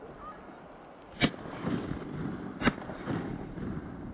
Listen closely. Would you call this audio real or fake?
real